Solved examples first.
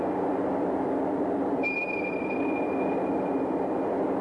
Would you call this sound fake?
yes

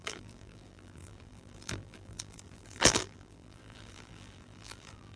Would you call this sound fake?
yes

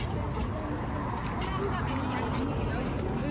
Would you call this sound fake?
no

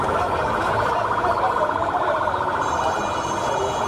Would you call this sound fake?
no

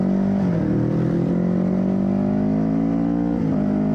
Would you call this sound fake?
no